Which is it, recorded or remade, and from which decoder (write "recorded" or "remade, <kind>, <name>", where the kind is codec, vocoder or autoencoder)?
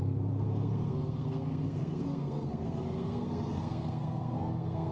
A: remade, codec, SNAC